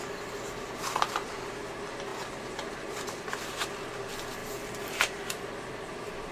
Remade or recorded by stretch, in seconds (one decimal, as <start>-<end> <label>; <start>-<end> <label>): 0.0-2.1 recorded; 2.1-3.7 remade; 3.7-4.4 recorded; 4.4-6.3 remade